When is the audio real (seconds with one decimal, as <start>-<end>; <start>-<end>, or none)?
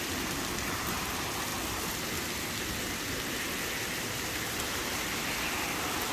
1.5-4.0; 5.2-6.1